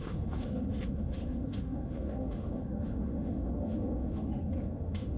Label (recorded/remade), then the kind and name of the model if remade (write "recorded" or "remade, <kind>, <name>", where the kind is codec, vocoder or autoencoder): remade, autoencoder, DAC-VAE